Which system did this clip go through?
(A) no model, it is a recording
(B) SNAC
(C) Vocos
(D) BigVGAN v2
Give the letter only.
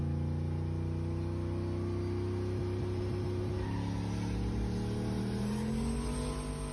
A